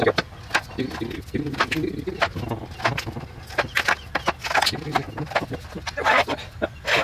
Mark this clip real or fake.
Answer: real